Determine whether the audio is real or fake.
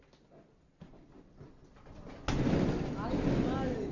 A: real